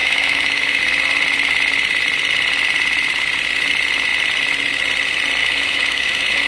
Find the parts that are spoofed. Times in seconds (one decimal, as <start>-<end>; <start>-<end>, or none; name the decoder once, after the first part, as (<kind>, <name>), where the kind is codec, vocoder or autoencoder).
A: 0.0-0.8 (autoencoder, DAC-VAE); 5.4-6.5